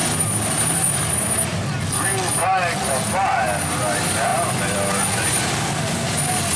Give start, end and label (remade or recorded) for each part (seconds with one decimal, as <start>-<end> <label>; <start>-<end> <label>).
0.0-6.6 recorded